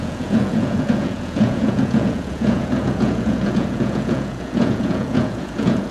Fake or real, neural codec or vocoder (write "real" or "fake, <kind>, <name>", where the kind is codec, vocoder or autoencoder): fake, vocoder, Vocos